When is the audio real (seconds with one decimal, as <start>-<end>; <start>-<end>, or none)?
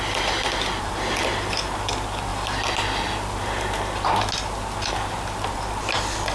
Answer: 0.0-6.3